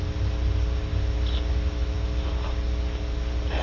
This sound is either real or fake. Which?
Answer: real